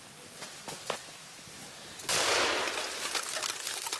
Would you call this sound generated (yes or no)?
no